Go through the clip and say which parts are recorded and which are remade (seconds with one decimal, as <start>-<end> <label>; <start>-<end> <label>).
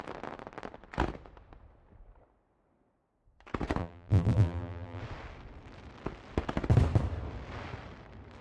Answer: 0.0-3.8 recorded; 3.8-5.0 remade; 5.0-8.4 recorded